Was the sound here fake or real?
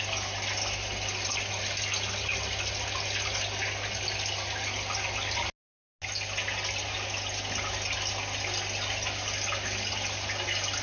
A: real